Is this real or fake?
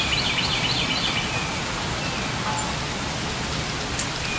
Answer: real